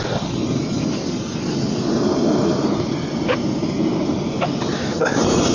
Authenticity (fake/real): real